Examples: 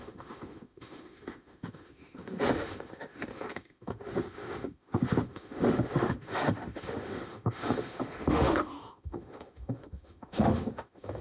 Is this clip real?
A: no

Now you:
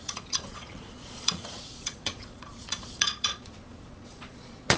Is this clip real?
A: no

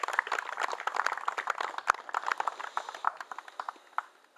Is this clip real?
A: yes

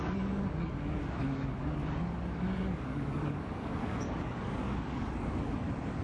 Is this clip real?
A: no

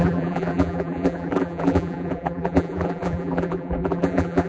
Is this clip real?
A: no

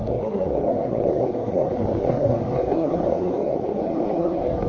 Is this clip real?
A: no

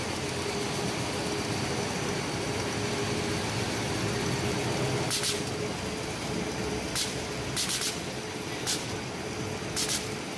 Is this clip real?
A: yes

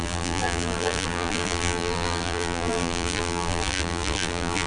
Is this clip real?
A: no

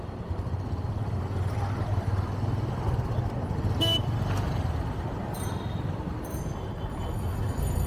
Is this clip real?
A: yes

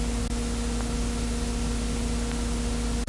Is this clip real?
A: yes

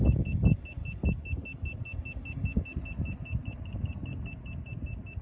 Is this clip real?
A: yes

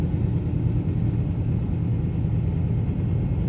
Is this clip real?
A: yes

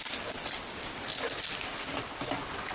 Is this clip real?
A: yes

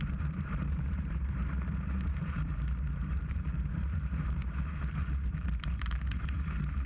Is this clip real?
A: no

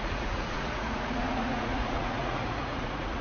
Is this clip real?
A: no